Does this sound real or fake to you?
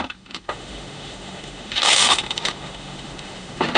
fake